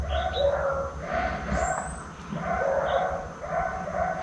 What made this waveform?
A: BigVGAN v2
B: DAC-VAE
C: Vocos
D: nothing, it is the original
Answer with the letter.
D